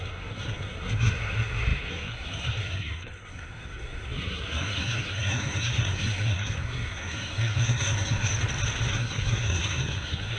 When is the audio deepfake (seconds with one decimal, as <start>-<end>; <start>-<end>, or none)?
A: 0.0-8.3; 8.9-10.4